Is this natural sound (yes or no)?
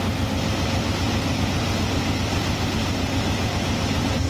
yes